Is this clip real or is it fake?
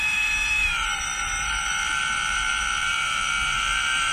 fake